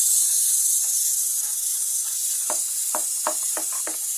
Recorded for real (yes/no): yes